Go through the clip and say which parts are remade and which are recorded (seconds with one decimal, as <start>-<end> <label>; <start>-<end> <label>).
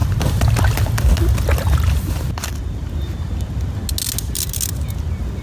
0.0-5.4 recorded